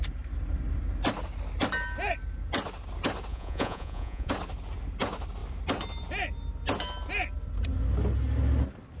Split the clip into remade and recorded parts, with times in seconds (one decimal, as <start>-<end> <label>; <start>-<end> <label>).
0.0-3.3 recorded; 3.3-4.3 remade; 4.3-9.0 recorded